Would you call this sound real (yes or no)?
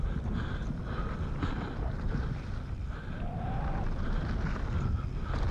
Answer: yes